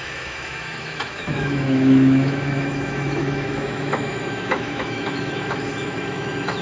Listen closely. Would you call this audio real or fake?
fake